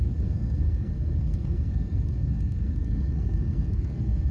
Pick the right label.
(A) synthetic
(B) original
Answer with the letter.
A